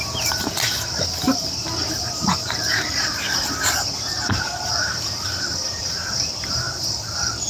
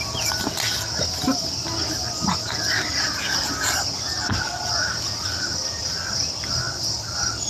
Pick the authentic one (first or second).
second